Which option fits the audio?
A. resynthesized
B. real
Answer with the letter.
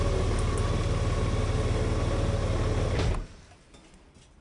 B